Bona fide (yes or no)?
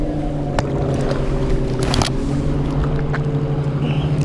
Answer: yes